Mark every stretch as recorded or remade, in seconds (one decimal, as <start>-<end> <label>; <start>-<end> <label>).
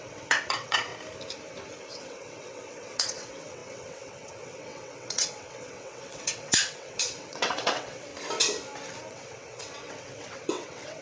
0.0-0.9 remade; 0.9-1.9 recorded; 1.9-8.1 remade; 8.1-9.1 recorded; 9.1-11.0 remade